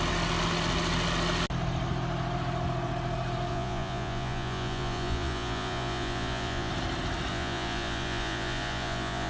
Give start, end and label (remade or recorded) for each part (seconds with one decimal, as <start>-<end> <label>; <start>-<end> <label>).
0.0-3.5 recorded; 3.5-6.7 remade; 6.7-7.3 recorded; 7.3-9.3 remade